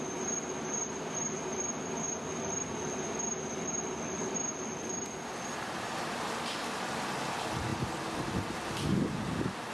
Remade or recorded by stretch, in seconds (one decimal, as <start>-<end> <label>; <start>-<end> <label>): 0.0-9.7 recorded